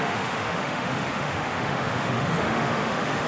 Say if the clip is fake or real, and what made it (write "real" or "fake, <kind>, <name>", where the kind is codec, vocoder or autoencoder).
fake, autoencoder, DAC-VAE